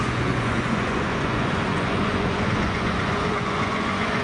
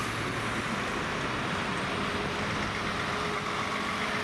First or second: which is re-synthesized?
first